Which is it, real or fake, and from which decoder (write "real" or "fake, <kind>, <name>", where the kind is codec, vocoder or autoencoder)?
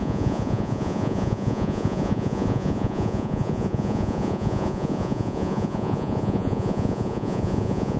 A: fake, vocoder, Vocos